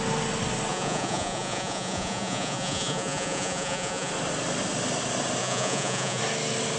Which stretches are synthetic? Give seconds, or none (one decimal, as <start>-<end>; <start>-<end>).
0.7-4.1; 5.4-6.2